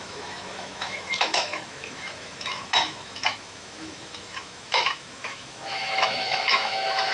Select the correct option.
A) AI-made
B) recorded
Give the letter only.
A